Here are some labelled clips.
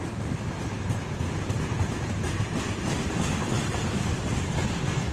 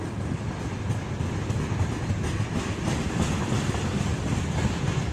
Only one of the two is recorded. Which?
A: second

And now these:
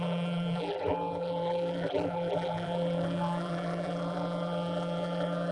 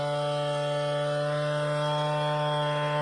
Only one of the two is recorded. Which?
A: second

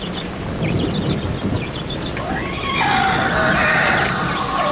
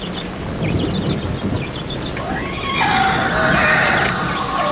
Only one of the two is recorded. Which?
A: second